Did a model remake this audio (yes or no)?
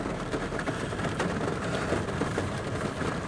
no